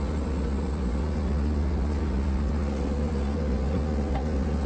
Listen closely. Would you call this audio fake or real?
fake